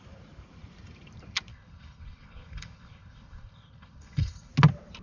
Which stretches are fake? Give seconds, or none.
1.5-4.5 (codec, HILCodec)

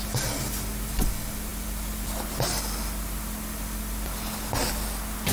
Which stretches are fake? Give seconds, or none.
none

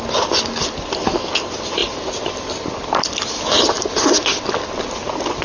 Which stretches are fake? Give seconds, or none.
none

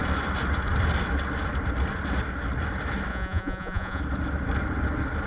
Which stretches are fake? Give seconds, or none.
3.1-4.0 (vocoder, Vocos)

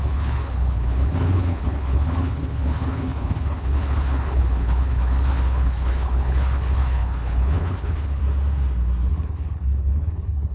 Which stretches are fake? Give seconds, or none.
0.0-8.2 (codec, HILCodec); 9.1-10.5

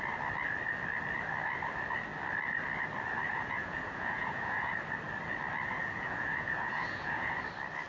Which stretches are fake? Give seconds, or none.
3.3-4.7 (vocoder, Vocos); 5.8-7.3

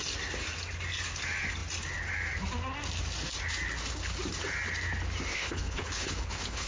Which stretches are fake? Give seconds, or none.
5.3-6.7 (codec, HILCodec)